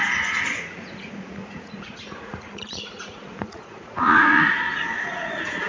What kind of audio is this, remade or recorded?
remade